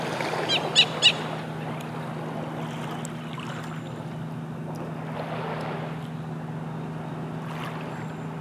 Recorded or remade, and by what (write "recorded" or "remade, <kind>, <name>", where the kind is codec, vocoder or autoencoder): recorded